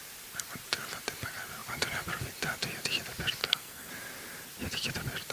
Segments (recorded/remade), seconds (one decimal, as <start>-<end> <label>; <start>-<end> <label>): 0.0-3.4 recorded; 3.4-3.9 remade; 3.9-5.3 recorded